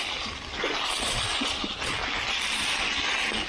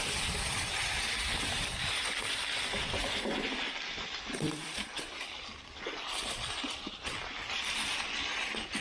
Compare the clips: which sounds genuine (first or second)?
first